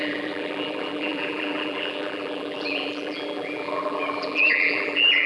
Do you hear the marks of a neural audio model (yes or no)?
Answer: yes